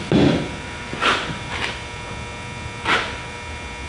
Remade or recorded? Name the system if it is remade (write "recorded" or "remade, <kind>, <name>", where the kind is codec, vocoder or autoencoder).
recorded